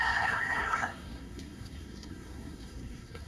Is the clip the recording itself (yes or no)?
no